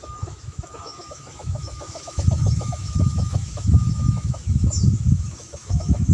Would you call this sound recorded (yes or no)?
no